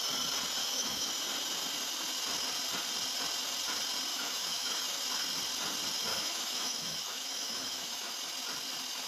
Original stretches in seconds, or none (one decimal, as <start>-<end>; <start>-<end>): 0.0-0.6; 1.1-4.1; 5.0-6.1; 8.1-9.1